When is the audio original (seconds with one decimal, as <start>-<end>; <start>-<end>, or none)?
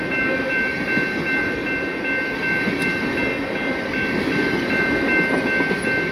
0.0-6.1